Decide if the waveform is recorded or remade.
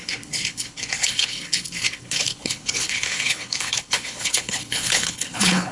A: remade